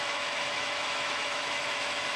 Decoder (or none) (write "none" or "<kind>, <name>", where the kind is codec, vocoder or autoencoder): autoencoder, DAC-VAE